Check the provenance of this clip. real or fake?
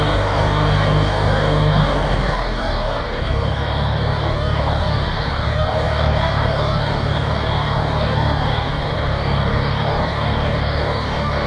fake